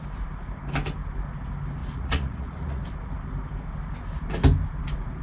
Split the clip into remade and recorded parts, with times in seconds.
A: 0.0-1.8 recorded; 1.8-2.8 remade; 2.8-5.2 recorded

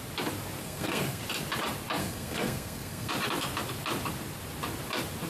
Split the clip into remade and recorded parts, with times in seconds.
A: 0.0-0.6 recorded; 0.6-1.2 remade; 1.2-2.0 recorded; 2.0-3.1 remade; 3.1-5.3 recorded

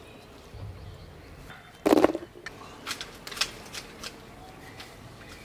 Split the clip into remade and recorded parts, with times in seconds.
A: 0.0-5.4 recorded